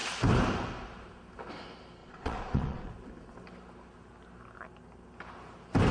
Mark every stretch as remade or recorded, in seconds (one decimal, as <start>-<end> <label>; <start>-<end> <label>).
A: 0.0-2.0 recorded; 2.0-2.9 remade; 2.9-5.9 recorded